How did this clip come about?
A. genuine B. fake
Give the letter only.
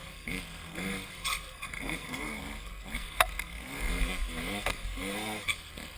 B